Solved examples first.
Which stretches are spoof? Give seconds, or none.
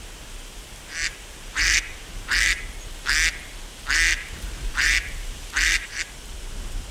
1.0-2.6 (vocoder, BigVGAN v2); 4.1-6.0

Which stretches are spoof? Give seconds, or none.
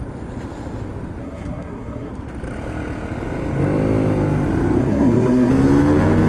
1.2-2.1 (codec, SNAC); 4.8-5.5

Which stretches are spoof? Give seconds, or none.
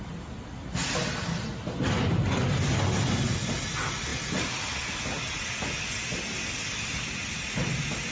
none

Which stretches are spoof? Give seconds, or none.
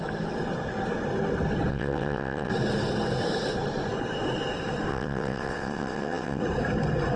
1.7-2.5 (vocoder, WaveNeXt); 4.9-6.4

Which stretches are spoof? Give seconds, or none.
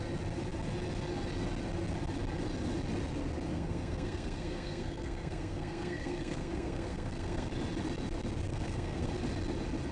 3.5-7.5 (codec, SNAC); 8.5-9.1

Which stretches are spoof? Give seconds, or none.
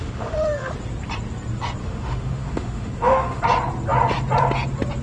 0.0-0.7 (autoencoder, DAC-VAE); 1.8-3.4